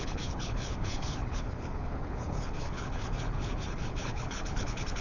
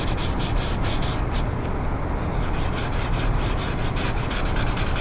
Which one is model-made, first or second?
first